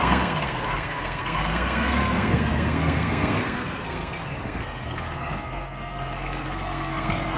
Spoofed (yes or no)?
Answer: yes